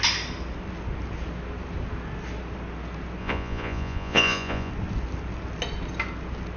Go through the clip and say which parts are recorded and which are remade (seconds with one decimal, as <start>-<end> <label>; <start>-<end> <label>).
0.0-3.2 recorded; 3.2-4.7 remade; 4.7-6.6 recorded